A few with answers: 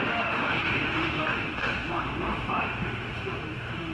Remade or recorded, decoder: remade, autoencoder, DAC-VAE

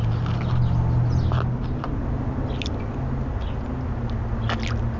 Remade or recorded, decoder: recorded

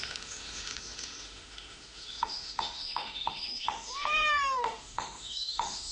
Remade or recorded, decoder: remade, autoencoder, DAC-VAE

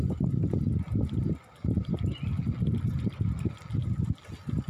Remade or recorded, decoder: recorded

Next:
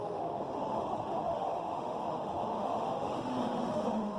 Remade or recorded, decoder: remade, autoencoder, DAC-VAE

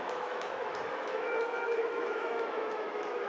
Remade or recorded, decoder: remade, autoencoder, DAC-VAE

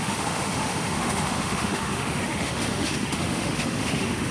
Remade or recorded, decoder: remade, autoencoder, DAC-VAE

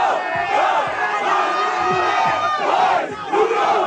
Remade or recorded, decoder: recorded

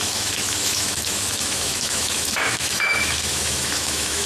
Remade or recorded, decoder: remade, autoencoder, DAC-VAE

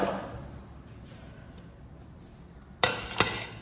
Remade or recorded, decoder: recorded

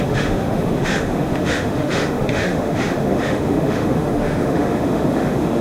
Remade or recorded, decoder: remade, autoencoder, DAC-VAE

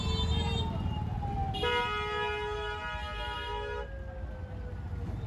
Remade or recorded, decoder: recorded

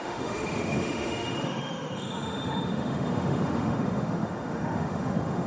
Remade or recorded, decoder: remade, autoencoder, DAC-VAE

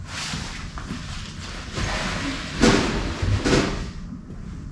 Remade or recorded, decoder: recorded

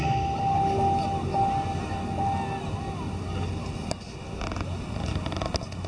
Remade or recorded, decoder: recorded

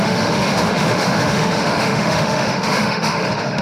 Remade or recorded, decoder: remade, autoencoder, DAC-VAE